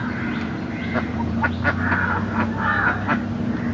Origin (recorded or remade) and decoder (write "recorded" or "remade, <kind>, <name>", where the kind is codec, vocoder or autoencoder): recorded